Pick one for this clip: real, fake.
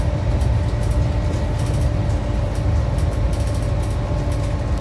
real